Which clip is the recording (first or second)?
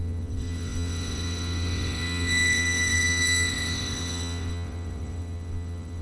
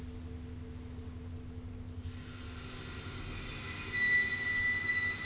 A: second